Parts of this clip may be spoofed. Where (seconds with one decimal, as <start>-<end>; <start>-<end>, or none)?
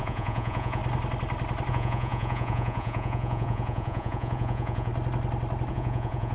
0.0-0.8; 1.7-4.9; 5.7-6.3